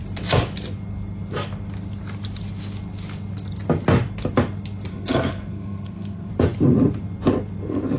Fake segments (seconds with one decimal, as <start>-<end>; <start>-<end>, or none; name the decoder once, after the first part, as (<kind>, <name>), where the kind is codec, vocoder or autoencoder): 4.9-6.3 (codec, SNAC)